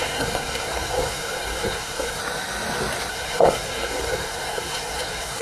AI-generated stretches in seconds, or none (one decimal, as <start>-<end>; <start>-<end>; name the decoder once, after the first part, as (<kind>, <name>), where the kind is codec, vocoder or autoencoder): 0.0-2.2 (codec, SNAC); 3.1-5.4